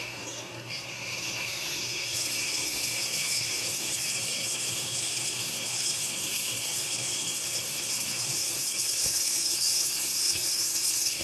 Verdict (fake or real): fake